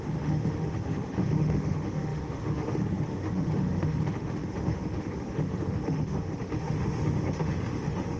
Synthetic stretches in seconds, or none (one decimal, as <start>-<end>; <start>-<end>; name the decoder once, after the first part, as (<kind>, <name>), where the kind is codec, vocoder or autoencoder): 0.0-8.2 (autoencoder, DAC-VAE)

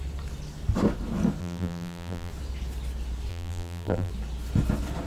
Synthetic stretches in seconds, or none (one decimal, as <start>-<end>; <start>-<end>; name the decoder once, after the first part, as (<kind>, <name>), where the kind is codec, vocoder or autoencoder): 1.4-2.3 (vocoder, BigVGAN v2); 3.3-4.1

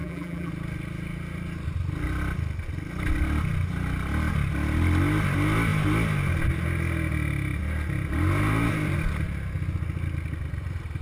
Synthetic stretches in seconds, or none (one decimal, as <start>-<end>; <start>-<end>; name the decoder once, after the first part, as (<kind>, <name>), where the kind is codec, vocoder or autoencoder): 0.0-0.5 (vocoder, BigVGAN v2)

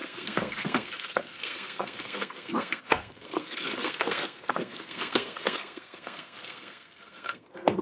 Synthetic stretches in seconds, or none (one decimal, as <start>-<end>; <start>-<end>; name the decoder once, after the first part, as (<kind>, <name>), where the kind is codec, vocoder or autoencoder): 0.0-7.8 (codec, SNAC)

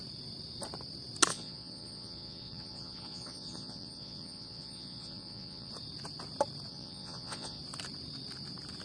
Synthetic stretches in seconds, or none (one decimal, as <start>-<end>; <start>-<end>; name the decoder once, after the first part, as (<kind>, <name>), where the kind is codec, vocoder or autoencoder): 1.3-5.7 (vocoder, Vocos); 6.7-7.6

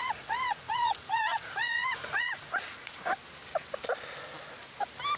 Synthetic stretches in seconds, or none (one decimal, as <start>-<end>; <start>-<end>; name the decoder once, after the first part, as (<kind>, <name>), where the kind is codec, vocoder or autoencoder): 0.0-3.1 (vocoder, Vocos)

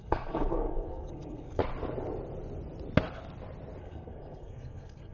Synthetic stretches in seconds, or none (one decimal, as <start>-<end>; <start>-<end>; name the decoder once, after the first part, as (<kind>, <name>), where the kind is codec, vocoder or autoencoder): 0.0-1.6 (codec, SNAC); 3.8-5.1

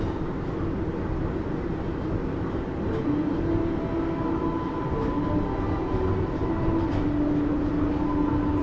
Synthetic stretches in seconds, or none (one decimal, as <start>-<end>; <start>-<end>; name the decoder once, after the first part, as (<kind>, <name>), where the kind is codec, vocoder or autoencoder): none